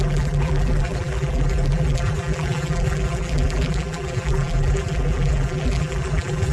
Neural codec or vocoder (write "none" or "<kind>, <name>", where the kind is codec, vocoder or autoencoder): vocoder, BigVGAN v2